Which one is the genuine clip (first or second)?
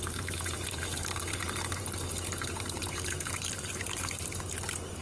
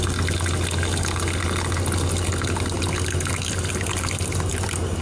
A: second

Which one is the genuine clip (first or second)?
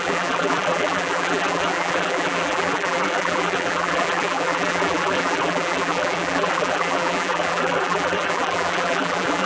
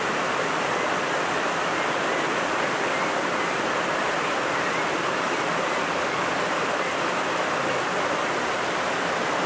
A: second